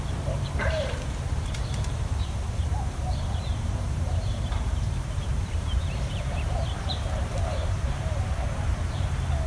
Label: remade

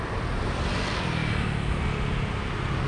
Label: recorded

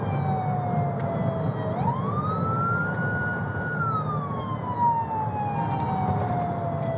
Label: recorded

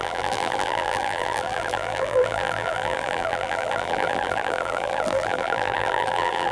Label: remade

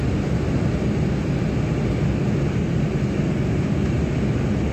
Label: recorded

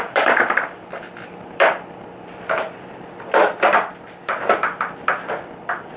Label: remade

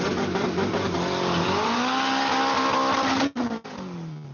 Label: recorded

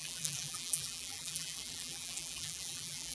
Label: remade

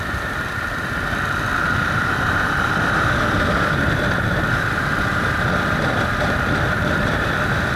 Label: remade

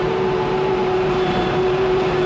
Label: remade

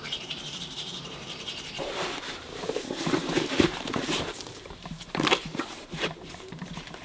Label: remade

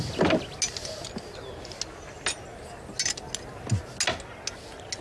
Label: recorded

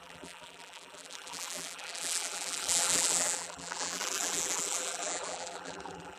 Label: remade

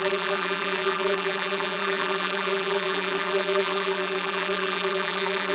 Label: remade